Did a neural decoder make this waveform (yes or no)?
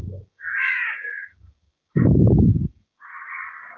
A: yes